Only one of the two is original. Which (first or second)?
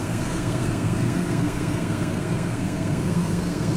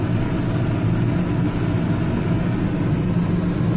second